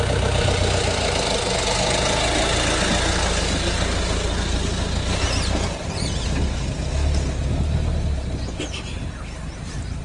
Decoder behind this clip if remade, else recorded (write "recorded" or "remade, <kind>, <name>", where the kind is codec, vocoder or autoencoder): recorded